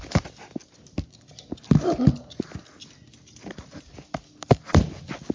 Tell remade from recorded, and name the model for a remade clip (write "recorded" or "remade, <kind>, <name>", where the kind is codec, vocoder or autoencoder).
recorded